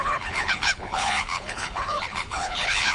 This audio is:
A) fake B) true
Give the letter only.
A